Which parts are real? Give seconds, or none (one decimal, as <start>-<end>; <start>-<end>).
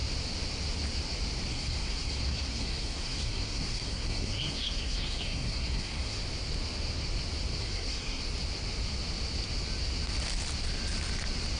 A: 0.0-1.5; 6.2-7.6; 8.2-11.6